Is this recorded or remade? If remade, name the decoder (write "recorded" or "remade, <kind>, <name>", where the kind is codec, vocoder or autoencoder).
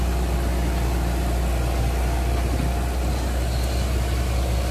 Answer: recorded